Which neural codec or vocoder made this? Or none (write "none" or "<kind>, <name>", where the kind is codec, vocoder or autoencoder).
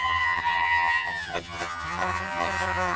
vocoder, HiFi-GAN